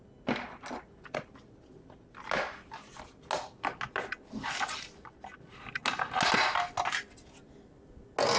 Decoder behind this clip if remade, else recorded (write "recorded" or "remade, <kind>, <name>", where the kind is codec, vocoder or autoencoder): recorded